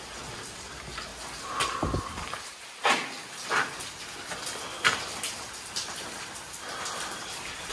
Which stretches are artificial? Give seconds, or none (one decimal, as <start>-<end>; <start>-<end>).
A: 0.0-1.1; 5.7-7.7